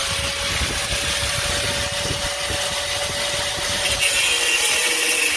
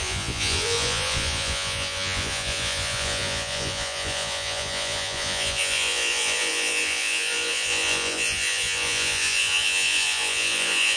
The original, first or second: first